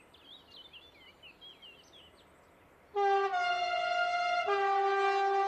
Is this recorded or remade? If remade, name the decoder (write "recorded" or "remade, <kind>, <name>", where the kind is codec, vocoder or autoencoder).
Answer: recorded